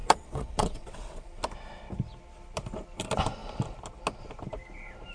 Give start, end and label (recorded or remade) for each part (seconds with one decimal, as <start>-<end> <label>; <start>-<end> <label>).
0.0-1.4 remade; 1.4-5.1 recorded

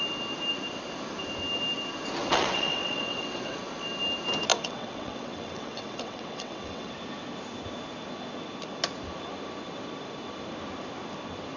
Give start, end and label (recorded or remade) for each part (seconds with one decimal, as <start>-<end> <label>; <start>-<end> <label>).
0.0-2.2 recorded; 2.2-3.6 remade; 3.6-4.5 recorded; 4.5-6.9 remade; 6.9-11.6 recorded